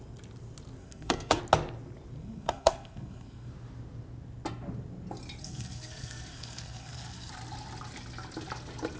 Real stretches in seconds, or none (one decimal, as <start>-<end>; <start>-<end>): 0.0-0.8; 1.4-2.2; 3.5-5.4; 7.3-9.0